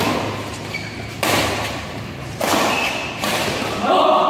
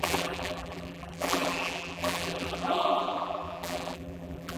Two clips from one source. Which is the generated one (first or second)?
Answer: second